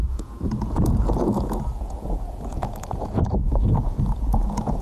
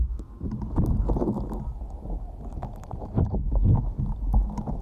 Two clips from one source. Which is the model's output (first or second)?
first